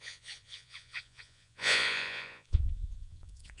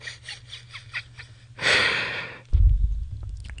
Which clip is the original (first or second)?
second